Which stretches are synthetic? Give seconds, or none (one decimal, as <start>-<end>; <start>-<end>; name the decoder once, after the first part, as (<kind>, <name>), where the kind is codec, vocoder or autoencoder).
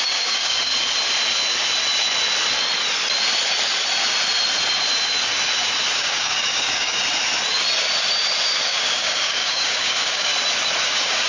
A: 0.0-0.7 (codec, DAC); 5.9-7.0; 8.7-10.3; 10.8-11.3